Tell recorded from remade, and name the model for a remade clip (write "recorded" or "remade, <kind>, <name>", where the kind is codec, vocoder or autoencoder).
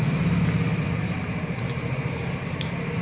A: recorded